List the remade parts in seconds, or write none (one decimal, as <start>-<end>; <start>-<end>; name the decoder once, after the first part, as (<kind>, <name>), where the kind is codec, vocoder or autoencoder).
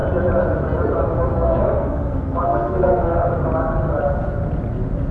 1.3-3.3 (codec, SNAC)